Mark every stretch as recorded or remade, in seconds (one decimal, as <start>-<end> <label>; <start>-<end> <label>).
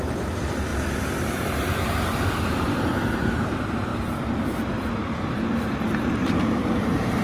0.0-0.7 remade; 0.7-1.3 recorded; 1.3-3.9 remade; 3.9-4.9 recorded; 4.9-7.2 remade